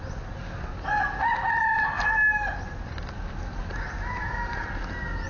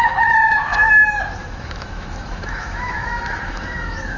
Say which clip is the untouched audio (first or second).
first